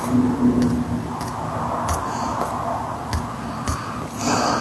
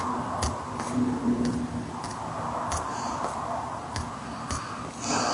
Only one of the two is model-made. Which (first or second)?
second